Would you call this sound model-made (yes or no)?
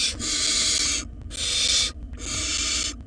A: no